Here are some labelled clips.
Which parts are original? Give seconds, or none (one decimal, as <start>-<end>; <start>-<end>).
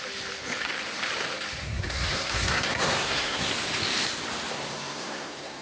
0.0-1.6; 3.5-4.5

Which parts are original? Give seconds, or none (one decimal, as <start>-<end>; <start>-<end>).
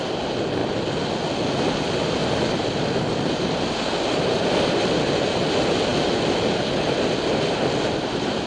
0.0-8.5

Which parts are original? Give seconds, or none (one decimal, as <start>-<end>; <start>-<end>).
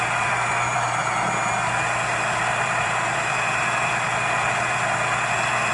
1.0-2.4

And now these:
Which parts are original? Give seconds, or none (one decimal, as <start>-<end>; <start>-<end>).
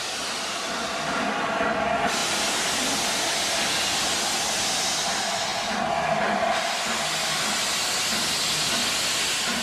0.0-9.6